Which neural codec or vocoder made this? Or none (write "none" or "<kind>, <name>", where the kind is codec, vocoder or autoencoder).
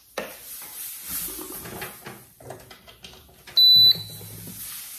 none